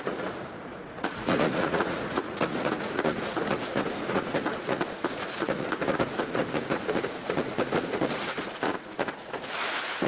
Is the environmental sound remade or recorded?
remade